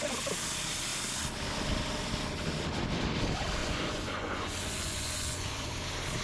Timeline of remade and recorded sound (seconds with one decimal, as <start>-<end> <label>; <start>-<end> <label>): 0.0-3.6 recorded; 3.6-5.7 remade; 5.7-6.2 recorded